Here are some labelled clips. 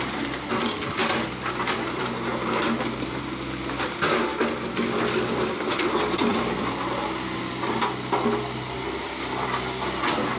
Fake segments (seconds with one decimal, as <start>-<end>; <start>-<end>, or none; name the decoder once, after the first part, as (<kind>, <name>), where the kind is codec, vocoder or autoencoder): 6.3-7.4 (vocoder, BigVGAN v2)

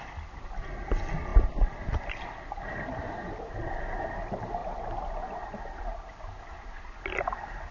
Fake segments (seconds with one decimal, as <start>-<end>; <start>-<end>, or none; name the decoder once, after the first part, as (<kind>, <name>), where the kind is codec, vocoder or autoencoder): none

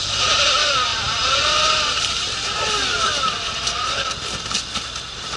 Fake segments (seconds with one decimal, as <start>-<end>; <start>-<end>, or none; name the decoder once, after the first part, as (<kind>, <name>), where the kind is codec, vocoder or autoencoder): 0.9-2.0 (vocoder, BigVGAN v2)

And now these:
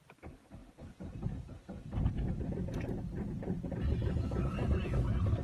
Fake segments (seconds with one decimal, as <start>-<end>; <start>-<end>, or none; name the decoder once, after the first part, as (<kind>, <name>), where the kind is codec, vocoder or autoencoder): 0.6-3.7 (vocoder, BigVGAN v2)

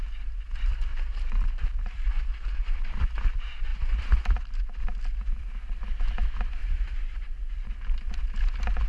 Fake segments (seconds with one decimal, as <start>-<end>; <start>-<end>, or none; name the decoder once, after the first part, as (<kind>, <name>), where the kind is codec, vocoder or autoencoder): 0.9-2.1 (vocoder, BigVGAN v2); 6.6-8.1